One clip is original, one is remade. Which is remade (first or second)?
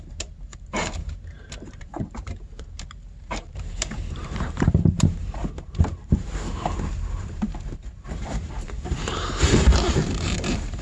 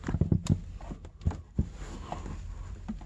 first